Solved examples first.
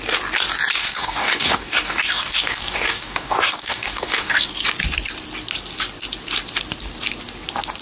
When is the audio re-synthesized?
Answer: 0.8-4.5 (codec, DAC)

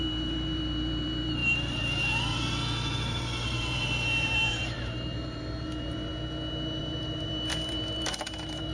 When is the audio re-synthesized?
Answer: 0.0-6.1 (vocoder, BigVGAN v2); 6.8-8.7

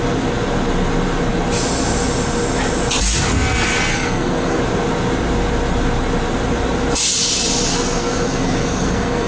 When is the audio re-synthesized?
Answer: 3.9-4.6 (codec, SNAC); 7.7-9.3

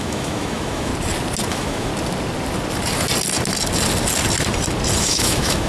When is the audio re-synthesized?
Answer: 0.0-0.9 (autoencoder, DAC-VAE); 1.5-1.9; 5.0-5.7

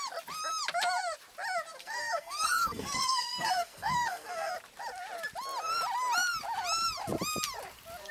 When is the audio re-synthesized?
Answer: 1.8-4.5 (codec, SNAC)